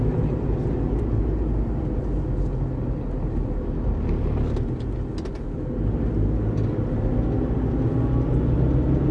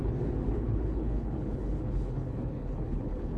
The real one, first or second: first